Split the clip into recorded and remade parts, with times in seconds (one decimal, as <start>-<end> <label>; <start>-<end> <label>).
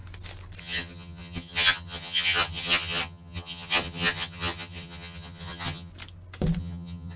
0.0-0.6 recorded; 0.6-5.9 remade; 5.9-6.6 recorded; 6.6-7.2 remade